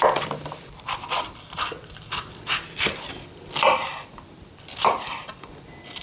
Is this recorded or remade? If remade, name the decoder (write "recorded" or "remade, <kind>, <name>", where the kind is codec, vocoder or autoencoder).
remade, vocoder, BigVGAN v2